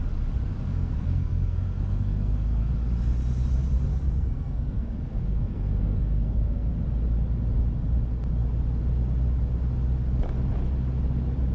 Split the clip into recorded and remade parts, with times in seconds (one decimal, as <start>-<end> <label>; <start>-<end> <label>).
0.0-0.7 recorded; 0.7-2.7 remade; 2.7-3.9 recorded; 3.9-6.7 remade; 6.7-11.5 recorded